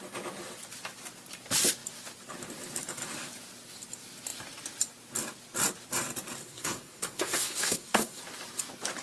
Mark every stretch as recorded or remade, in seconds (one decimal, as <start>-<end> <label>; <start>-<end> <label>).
0.0-6.4 recorded; 6.4-8.2 remade; 8.2-9.0 recorded